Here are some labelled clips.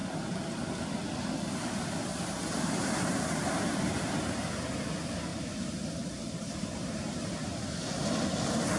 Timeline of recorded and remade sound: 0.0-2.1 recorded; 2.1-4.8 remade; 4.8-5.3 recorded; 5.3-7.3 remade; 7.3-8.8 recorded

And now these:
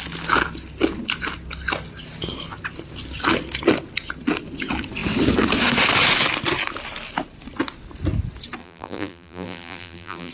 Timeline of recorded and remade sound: 0.0-8.6 recorded; 8.6-10.3 remade